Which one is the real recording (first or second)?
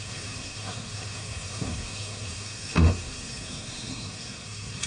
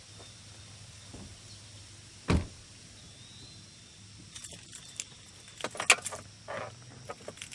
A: second